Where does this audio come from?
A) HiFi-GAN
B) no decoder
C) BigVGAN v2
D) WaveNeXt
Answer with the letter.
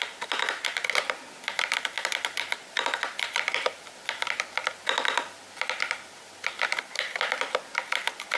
C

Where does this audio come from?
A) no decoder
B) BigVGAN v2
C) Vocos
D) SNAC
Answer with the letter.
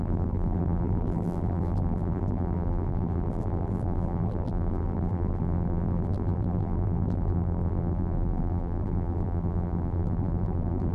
B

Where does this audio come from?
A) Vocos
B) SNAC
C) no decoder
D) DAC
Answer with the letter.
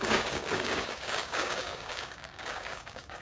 D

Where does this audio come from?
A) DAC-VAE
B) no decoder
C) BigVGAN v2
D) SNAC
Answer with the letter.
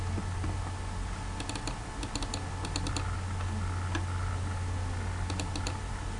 B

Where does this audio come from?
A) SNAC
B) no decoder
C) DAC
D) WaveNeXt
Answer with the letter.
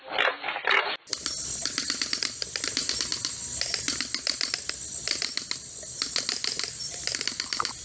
B